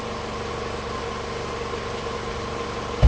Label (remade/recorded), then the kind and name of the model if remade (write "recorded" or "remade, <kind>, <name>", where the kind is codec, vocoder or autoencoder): recorded